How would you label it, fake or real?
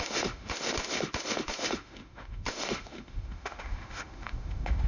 fake